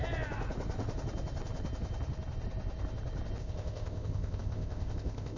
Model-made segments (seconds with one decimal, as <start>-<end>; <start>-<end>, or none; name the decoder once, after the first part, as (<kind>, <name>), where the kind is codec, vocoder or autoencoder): 3.4-5.4 (codec, ZipCodec)